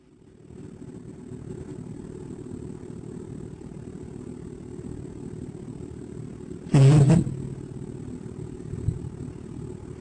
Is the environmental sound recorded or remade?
recorded